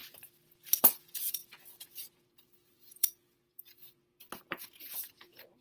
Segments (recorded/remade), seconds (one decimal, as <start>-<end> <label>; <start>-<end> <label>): 0.0-0.8 recorded; 0.8-5.6 remade